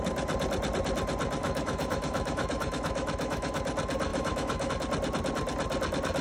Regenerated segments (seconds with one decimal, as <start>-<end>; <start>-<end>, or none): 1.4-3.6; 4.1-4.7